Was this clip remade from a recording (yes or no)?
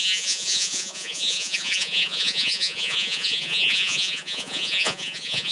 yes